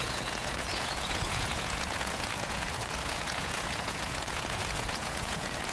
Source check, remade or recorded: remade